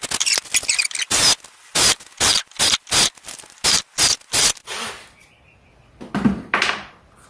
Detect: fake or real real